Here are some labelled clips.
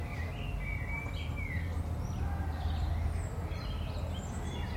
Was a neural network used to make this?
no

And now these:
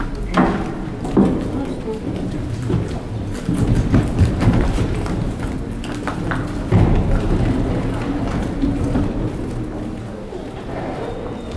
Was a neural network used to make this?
no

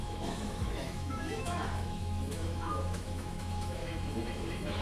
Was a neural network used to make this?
yes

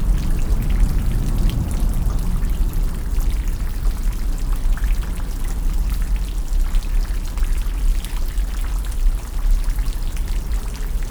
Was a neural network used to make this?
no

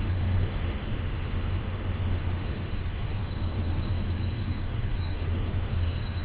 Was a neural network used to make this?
yes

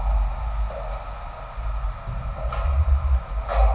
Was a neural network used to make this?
no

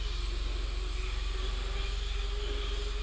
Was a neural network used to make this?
no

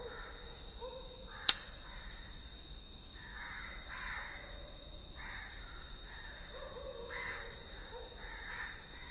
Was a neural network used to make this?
yes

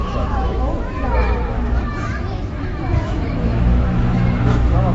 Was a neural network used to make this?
yes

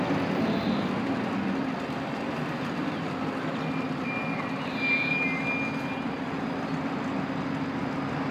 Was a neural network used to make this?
no